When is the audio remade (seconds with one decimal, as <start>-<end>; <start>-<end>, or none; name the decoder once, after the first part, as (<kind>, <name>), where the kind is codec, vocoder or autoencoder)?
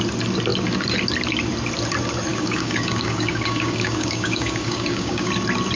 2.3-5.3 (codec, DAC)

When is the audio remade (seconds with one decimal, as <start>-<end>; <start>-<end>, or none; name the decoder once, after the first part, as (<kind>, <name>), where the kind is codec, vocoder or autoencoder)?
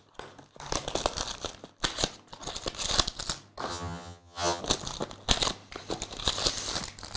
3.7-4.6 (vocoder, HiFi-GAN)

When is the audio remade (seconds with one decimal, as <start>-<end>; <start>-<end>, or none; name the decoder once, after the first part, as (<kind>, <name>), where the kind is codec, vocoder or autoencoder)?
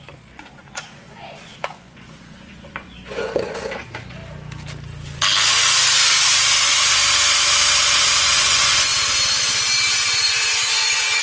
0.0-4.2 (vocoder, Vocos); 8.2-8.9; 10.0-11.2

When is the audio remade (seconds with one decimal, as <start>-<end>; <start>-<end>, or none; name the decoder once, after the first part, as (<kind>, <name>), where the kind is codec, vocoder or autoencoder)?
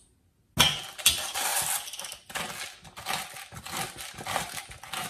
none